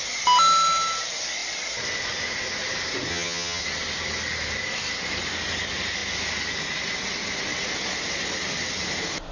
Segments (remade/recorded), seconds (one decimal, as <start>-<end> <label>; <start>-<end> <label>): 0.0-3.1 recorded; 3.1-3.6 remade; 3.6-9.3 recorded